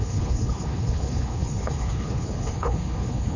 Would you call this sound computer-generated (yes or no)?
yes